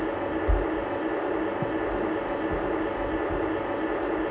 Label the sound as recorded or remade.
recorded